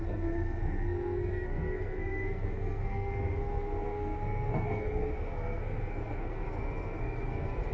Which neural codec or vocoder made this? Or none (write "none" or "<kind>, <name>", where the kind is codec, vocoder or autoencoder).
codec, SNAC